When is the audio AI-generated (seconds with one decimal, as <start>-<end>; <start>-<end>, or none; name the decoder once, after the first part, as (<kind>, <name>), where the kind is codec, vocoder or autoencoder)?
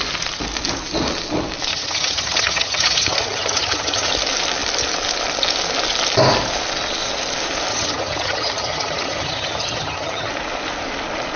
1.7-4.1 (vocoder, HiFi-GAN); 7.7-10.3